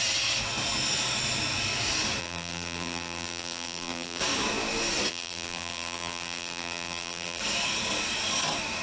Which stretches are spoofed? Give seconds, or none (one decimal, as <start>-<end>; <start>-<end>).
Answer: 2.2-4.2; 5.1-7.4